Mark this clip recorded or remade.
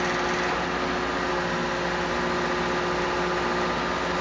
recorded